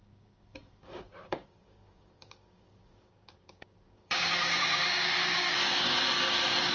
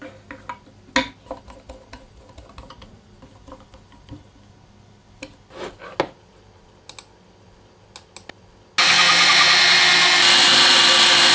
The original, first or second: second